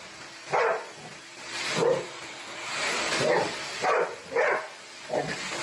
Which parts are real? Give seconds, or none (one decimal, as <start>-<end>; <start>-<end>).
0.0-1.8; 4.6-5.6